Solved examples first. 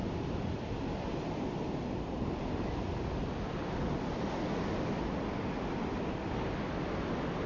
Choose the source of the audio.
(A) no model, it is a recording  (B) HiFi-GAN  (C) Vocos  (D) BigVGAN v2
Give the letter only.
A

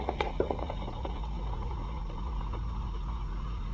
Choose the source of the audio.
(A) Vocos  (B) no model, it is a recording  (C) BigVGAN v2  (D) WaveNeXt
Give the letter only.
A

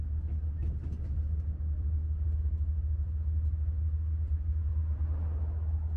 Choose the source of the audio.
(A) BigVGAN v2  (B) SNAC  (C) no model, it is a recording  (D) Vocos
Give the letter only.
C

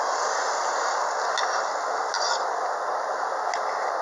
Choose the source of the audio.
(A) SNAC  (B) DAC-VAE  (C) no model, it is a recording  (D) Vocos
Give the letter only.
C